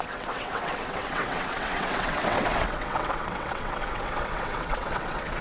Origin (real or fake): fake